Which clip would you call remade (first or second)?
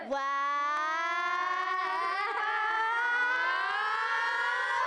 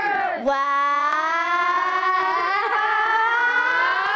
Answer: second